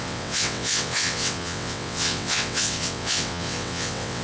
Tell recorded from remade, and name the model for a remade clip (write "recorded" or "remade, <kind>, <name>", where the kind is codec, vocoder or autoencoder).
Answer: remade, vocoder, WaveNeXt